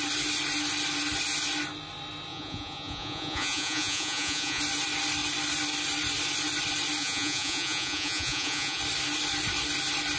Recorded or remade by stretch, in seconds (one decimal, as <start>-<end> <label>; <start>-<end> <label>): 0.0-2.3 recorded; 2.3-4.6 remade; 4.6-7.0 recorded; 7.0-8.8 remade; 8.8-10.2 recorded